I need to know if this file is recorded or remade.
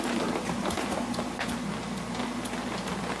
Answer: recorded